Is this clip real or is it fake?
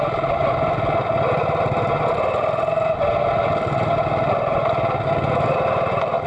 real